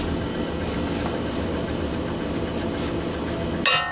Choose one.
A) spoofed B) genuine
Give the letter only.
B